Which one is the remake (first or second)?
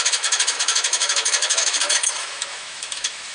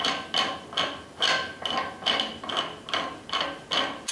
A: first